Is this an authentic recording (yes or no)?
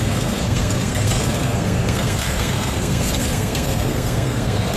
no